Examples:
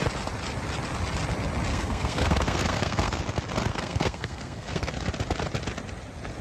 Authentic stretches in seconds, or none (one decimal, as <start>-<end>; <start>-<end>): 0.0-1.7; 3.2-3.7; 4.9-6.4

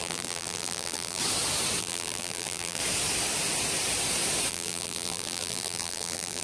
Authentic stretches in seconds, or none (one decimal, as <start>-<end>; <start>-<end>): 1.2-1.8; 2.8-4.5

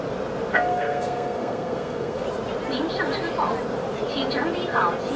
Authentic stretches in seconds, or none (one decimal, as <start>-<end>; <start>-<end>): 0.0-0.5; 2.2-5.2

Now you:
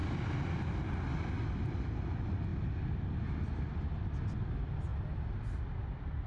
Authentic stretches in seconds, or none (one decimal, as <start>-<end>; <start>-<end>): 0.0-6.3

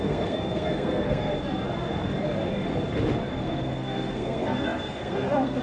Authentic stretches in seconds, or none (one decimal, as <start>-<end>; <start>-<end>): 1.3-3.4